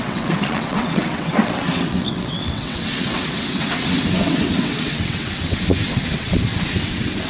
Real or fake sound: fake